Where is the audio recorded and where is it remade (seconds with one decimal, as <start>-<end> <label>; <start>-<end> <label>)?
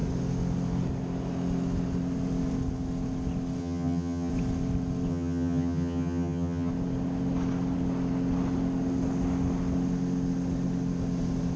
0.0-3.6 recorded; 3.6-4.3 remade; 4.3-5.1 recorded; 5.1-6.7 remade; 6.7-11.6 recorded